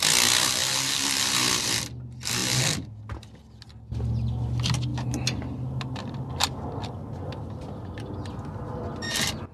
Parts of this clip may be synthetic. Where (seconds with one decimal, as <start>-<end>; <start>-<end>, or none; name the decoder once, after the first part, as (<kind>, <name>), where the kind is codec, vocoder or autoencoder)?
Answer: 0.6-1.8 (vocoder, BigVGAN v2); 4.9-6.3